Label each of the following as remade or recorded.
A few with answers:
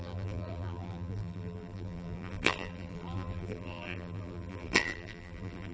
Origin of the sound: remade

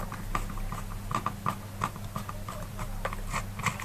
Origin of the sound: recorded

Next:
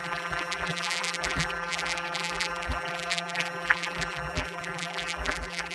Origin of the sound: remade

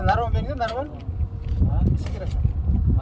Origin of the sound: remade